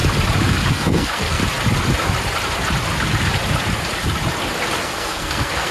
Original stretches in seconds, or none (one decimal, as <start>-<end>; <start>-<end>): 0.0-0.7; 1.4-4.8